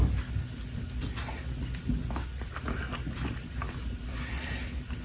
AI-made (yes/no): no